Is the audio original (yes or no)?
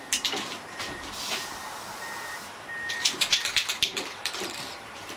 no